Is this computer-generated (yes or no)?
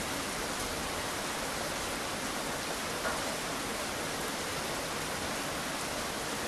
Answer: no